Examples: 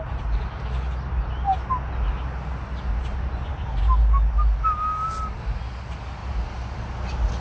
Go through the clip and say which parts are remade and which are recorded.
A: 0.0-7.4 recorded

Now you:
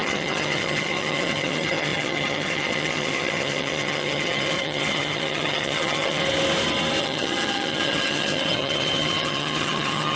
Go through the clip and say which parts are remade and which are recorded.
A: 0.0-6.2 remade; 6.2-7.0 recorded; 7.0-10.2 remade